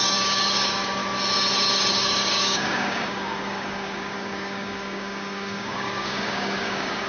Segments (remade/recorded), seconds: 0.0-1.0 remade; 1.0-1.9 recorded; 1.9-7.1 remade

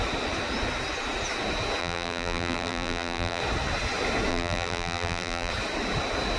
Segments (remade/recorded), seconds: 0.0-1.8 recorded; 1.8-3.4 remade; 3.4-4.3 recorded; 4.3-5.5 remade; 5.5-6.4 recorded